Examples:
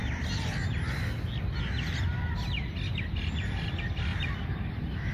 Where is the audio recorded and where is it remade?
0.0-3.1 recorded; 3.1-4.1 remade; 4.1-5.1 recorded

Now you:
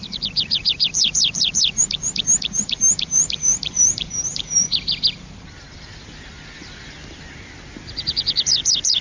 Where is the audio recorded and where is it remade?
0.0-4.7 remade; 4.7-7.9 recorded; 7.9-9.0 remade